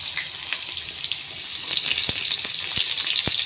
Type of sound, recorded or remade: recorded